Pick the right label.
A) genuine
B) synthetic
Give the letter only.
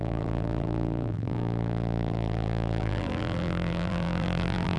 B